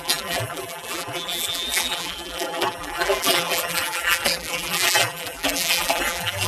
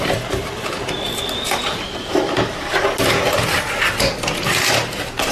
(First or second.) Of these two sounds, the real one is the second